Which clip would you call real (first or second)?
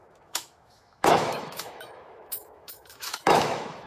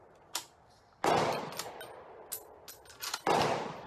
second